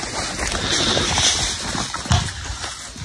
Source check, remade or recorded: recorded